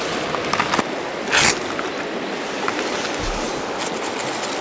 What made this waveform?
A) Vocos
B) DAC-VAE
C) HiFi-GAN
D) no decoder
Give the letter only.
D